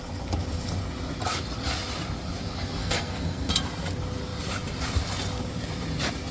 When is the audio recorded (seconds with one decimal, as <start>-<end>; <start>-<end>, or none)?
0.0-2.8; 3.5-6.3